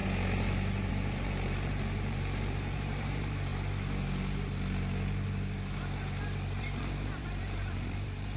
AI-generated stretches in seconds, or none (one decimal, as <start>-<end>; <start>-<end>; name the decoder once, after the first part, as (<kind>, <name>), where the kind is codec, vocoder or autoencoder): 0.9-3.5 (vocoder, BigVGAN v2); 6.6-8.4

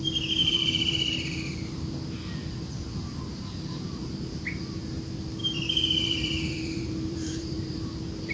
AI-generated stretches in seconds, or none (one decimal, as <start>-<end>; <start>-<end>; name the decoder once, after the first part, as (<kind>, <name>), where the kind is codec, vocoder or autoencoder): 0.4-1.9 (vocoder, BigVGAN v2); 5.4-8.3